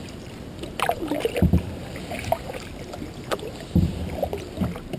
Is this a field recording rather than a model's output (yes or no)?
yes